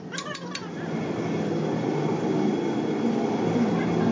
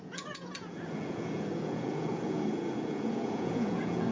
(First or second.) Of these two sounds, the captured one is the first